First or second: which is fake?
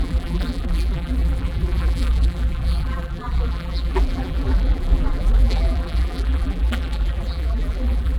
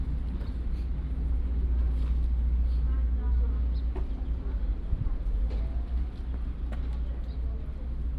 first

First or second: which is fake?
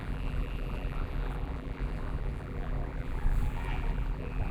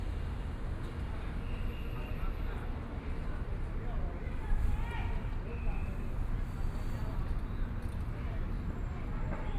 first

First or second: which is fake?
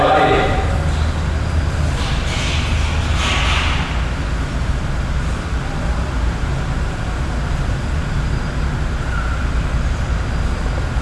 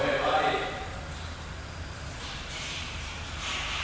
second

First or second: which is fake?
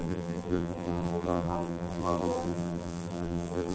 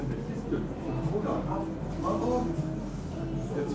first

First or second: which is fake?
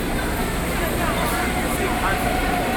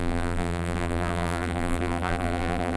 second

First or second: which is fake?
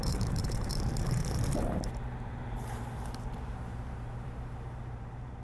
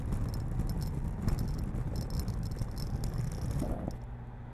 first